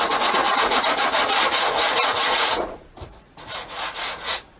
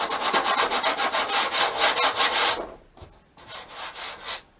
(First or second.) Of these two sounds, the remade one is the first